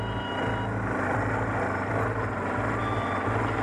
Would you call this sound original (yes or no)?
yes